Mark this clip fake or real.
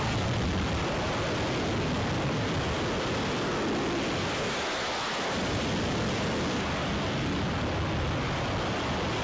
real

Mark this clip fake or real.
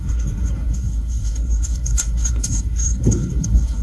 fake